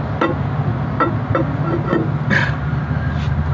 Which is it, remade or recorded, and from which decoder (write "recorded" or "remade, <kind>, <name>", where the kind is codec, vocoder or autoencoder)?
recorded